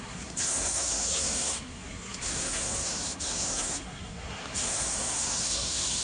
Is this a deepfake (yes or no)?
yes